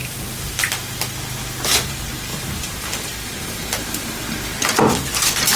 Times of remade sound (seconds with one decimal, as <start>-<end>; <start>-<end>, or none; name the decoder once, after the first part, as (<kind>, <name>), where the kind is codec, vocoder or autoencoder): 0.0-0.7 (vocoder, BigVGAN v2); 2.3-4.2

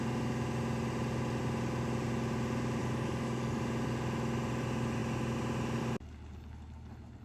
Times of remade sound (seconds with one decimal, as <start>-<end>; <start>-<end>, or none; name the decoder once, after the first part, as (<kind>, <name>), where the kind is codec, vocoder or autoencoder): 2.8-3.6 (codec, DAC)